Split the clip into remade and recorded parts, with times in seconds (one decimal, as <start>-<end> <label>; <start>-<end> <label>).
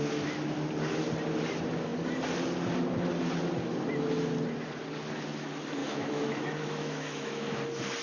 0.0-5.8 recorded; 5.8-7.6 remade; 7.6-8.0 recorded